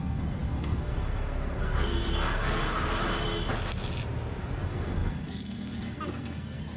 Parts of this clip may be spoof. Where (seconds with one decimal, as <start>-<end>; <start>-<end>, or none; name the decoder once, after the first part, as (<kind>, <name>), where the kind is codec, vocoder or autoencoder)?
0.0-2.6 (codec, SNAC); 4.4-6.8